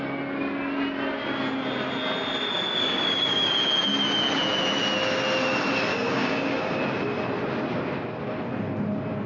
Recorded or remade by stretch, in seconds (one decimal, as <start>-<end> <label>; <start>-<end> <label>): 0.0-2.8 recorded; 2.8-3.5 remade; 3.5-5.9 recorded; 5.9-6.8 remade; 6.8-9.3 recorded